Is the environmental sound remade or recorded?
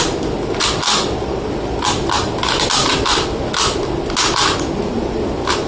recorded